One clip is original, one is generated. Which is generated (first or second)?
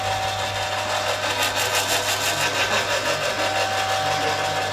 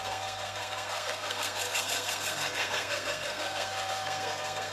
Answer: second